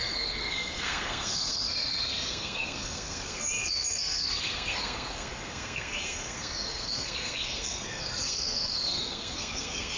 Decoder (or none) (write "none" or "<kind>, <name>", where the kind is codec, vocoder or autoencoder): codec, SNAC